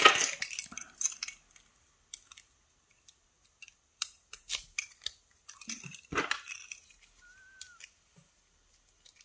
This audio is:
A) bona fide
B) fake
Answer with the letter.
A